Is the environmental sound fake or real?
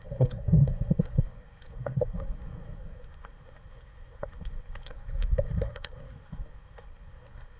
fake